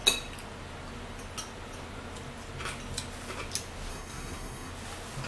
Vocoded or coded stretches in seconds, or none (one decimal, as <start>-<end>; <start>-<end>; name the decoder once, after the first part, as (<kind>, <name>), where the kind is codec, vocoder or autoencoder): 3.9-4.7 (codec, SNAC)